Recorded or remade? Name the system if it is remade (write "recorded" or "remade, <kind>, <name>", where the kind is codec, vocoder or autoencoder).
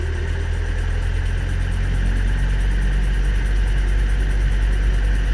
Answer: recorded